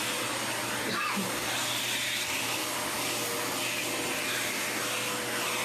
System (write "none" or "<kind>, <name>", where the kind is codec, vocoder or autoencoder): none